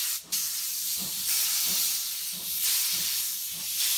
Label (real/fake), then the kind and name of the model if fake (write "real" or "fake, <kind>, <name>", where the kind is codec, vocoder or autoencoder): fake, vocoder, BigVGAN v2